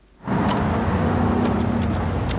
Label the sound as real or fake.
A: real